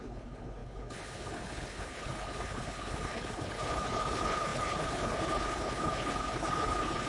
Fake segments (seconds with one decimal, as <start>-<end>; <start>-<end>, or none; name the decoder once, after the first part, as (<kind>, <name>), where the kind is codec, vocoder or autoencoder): 0.0-7.1 (codec, HILCodec)